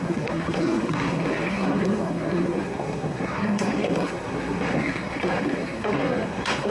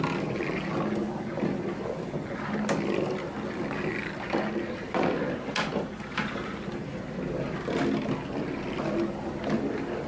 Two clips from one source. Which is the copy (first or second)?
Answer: first